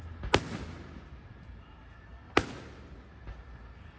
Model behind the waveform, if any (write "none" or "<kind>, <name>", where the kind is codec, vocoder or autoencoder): none